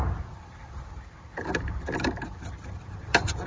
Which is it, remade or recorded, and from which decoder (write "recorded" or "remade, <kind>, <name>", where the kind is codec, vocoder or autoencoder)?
recorded